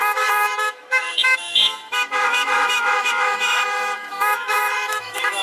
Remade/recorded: remade